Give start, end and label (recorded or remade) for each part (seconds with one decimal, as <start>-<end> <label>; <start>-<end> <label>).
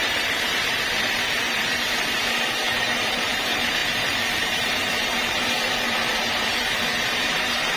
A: 0.0-1.7 remade; 1.7-2.8 recorded; 2.8-7.8 remade